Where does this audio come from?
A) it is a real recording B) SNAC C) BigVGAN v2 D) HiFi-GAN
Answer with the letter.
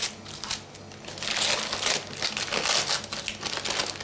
A